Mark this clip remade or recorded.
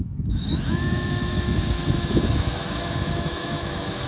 remade